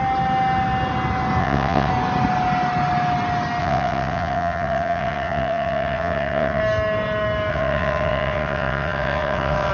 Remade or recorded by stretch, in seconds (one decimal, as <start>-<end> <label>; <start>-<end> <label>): 0.0-1.4 recorded; 1.4-1.9 remade; 1.9-3.6 recorded; 3.6-6.6 remade; 6.6-7.5 recorded; 7.5-9.7 remade